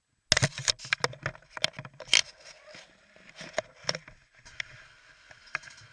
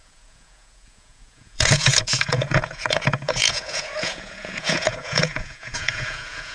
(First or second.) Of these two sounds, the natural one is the first